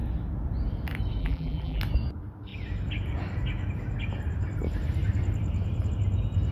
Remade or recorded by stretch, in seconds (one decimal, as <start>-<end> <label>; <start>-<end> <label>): 0.0-1.2 recorded; 1.2-1.8 remade; 1.8-6.5 recorded